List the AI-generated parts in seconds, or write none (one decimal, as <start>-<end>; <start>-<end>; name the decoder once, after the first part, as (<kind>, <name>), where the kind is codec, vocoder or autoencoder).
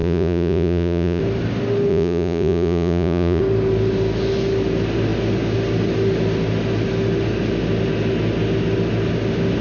0.0-1.2 (vocoder, Vocos); 1.9-3.4